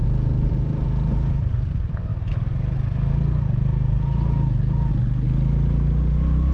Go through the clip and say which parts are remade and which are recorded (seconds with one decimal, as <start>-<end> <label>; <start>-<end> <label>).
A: 0.0-6.5 recorded